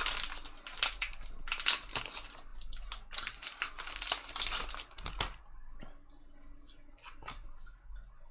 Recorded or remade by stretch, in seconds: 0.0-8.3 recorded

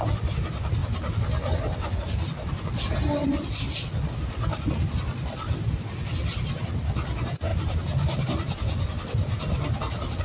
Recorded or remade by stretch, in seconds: 0.0-7.5 recorded; 7.5-10.2 remade

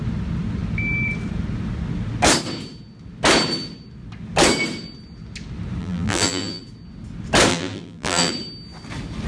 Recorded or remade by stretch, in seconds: 0.0-5.8 recorded; 5.8-6.6 remade; 6.6-7.5 recorded; 7.5-8.3 remade; 8.3-9.3 recorded

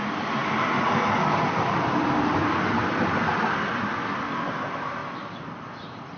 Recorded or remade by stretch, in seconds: 0.0-5.0 remade; 5.0-5.6 recorded; 5.6-6.2 remade

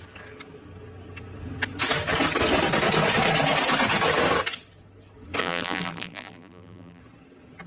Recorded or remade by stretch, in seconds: 0.0-5.4 recorded; 5.4-7.0 remade; 7.0-7.7 recorded

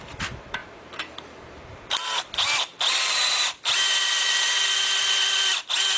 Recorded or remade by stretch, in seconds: 0.0-0.6 recorded; 0.6-1.4 remade; 1.4-6.0 recorded

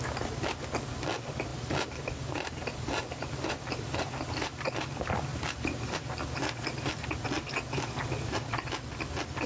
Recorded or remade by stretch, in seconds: 0.0-1.5 recorded; 1.5-4.7 remade; 4.7-5.3 recorded; 5.3-7.0 remade; 7.0-9.5 recorded

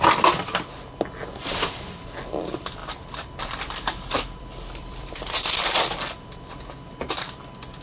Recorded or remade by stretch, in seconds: 0.0-2.8 recorded; 2.8-7.1 remade; 7.1-7.8 recorded